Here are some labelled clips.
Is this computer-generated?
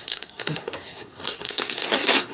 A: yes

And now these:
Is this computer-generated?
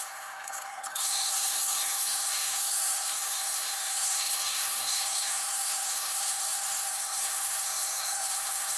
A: yes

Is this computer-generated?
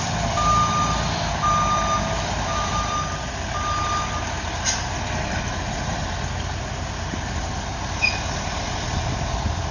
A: no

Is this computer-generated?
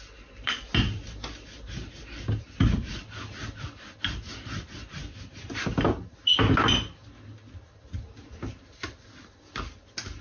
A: no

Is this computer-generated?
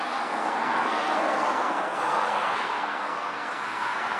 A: yes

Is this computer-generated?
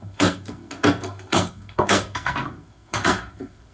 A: yes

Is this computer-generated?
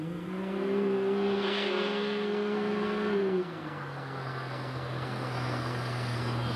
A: yes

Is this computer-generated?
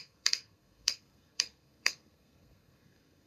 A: yes